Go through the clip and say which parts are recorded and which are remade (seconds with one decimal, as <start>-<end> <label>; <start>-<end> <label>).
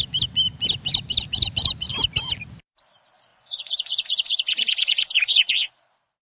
0.0-3.3 recorded; 3.3-5.7 remade; 5.7-6.2 recorded